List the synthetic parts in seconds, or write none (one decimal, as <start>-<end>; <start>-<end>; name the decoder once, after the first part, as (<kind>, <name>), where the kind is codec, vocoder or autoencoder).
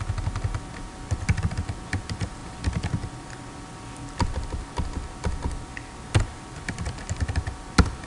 none